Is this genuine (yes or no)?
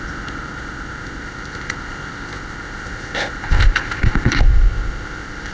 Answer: no